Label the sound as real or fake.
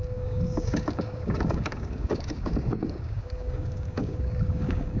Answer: fake